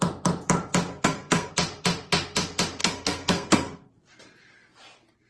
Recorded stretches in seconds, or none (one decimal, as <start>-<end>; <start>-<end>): 0.0-0.9; 1.5-2.8; 3.9-5.3